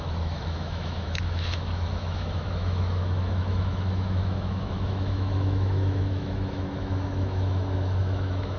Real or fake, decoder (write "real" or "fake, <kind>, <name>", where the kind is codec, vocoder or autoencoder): fake, autoencoder, DAC-VAE